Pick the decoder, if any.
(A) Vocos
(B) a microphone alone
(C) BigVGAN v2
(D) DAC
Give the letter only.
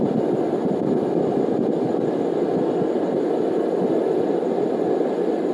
B